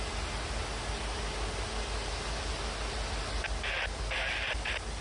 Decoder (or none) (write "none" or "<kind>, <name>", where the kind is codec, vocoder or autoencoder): none